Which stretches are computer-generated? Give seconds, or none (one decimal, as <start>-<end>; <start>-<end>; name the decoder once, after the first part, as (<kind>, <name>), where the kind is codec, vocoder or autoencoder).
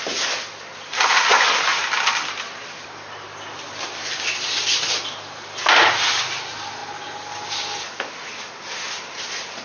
none